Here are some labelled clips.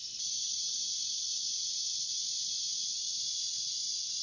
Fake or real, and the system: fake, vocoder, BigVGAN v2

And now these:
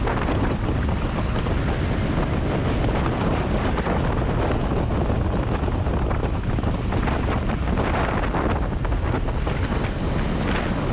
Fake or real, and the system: real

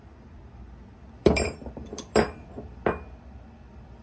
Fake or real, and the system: fake, vocoder, BigVGAN v2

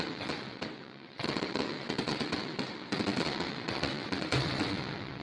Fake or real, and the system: fake, vocoder, WaveNeXt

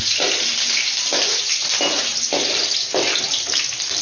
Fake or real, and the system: real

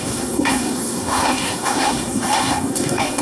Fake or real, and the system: fake, codec, SNAC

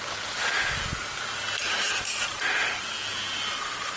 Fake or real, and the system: real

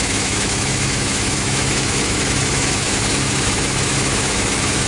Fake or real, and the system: fake, autoencoder, DAC-VAE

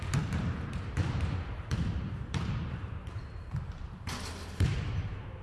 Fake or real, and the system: fake, vocoder, BigVGAN v2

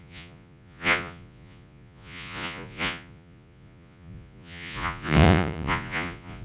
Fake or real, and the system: fake, vocoder, Vocos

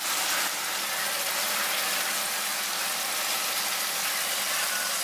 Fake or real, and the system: real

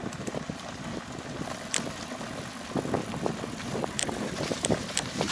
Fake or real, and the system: real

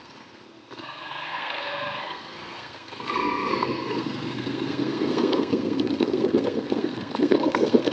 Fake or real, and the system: fake, codec, SNAC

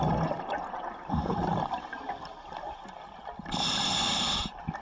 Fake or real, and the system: real